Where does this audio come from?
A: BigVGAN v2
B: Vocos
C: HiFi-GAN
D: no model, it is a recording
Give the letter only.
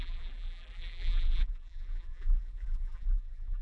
A